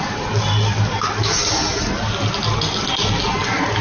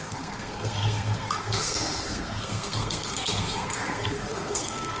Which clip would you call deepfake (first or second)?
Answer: second